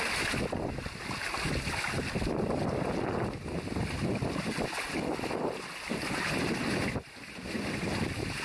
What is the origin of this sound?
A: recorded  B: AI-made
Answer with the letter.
A